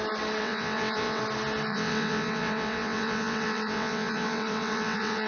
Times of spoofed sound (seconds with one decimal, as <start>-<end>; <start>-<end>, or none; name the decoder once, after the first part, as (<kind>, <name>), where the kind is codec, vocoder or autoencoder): 0.4-1.2 (vocoder, WaveNeXt); 1.7-5.3